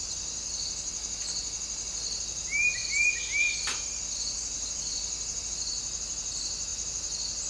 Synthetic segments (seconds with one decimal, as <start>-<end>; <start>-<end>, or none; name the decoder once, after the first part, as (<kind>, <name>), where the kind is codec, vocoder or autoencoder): none

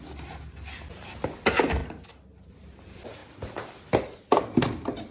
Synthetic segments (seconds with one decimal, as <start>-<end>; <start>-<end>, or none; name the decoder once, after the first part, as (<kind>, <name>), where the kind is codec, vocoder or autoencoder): none

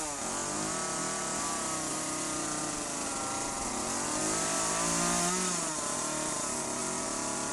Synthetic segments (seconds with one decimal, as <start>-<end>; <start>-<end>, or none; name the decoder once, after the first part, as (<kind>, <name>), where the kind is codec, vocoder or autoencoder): none

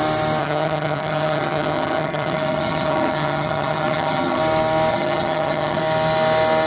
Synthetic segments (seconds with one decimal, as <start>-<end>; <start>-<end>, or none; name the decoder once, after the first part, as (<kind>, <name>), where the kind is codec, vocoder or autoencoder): 0.4-4.4 (vocoder, HiFi-GAN); 4.9-5.8

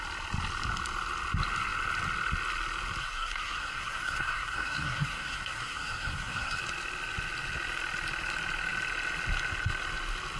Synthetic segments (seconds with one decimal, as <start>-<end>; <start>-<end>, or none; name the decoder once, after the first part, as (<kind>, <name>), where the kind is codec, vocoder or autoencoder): 3.0-6.6 (codec, SNAC)

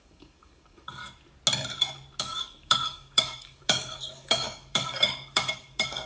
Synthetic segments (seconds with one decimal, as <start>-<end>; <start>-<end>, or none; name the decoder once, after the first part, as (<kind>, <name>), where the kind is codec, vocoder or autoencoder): 0.0-1.0 (codec, DAC); 2.2-6.1

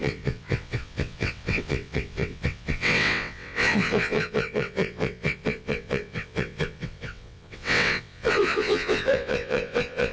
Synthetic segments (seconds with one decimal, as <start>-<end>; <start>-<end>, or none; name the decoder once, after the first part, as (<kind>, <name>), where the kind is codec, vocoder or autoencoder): 0.0-10.1 (vocoder, WaveNeXt)